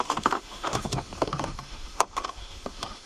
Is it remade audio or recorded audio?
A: remade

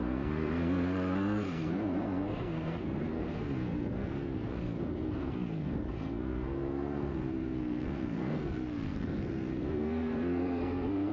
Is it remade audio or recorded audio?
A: remade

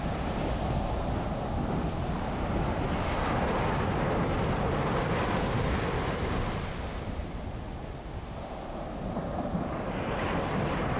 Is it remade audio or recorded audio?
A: recorded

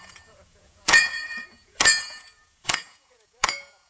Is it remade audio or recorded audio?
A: remade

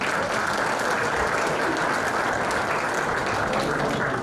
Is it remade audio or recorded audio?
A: recorded